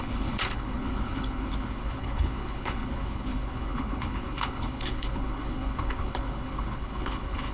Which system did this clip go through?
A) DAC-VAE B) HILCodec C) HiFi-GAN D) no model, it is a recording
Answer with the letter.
B